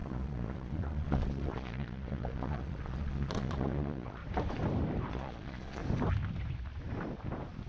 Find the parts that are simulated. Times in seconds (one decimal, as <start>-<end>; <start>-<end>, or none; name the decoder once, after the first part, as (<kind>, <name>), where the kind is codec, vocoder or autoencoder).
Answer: 0.0-4.2 (vocoder, Vocos); 5.1-5.8